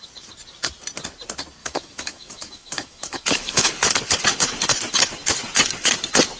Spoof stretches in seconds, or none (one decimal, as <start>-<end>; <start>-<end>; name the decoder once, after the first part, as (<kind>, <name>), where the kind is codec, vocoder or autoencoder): 1.6-3.7 (autoencoder, DAC-VAE)